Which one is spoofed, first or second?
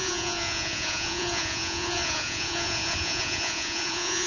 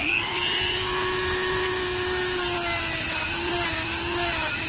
first